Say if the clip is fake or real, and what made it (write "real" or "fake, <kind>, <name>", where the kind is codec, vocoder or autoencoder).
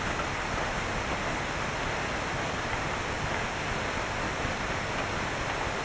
real